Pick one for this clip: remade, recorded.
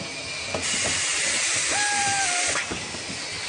recorded